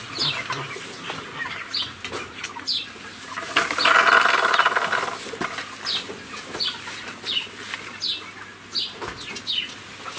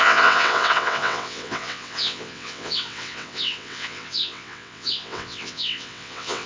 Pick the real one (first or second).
first